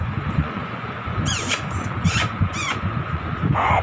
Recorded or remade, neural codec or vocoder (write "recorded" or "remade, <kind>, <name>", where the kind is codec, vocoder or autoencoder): remade, vocoder, Vocos